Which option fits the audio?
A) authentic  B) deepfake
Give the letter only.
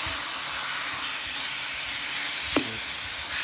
A